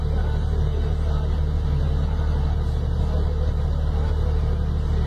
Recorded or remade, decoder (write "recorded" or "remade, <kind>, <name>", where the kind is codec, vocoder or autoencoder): recorded